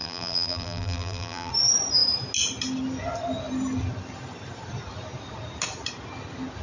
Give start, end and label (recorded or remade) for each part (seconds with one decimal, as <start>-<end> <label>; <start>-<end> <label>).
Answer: 0.0-1.5 remade; 1.5-6.6 recorded